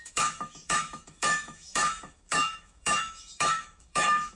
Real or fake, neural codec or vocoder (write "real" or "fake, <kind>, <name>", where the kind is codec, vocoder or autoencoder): fake, autoencoder, DAC-VAE